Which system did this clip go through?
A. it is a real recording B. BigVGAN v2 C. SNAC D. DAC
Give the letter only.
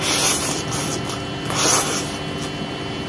A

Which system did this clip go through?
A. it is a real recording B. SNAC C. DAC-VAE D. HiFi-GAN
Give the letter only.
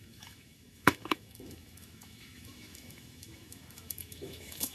C